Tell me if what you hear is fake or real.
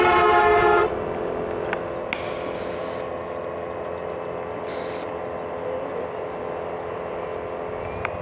real